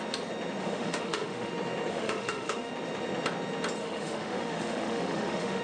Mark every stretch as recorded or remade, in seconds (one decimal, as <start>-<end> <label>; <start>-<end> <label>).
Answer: 0.0-0.6 recorded; 0.6-1.5 remade; 1.5-1.9 recorded; 1.9-2.7 remade; 2.7-3.8 recorded; 3.8-5.6 remade